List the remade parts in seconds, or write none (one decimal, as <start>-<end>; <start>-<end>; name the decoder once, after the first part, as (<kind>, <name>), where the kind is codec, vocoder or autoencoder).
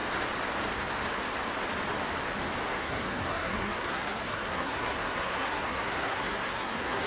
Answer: 2.7-7.1 (codec, SNAC)